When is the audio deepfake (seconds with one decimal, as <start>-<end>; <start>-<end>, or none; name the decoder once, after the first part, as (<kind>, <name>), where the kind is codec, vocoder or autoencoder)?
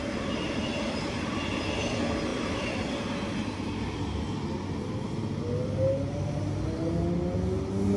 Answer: none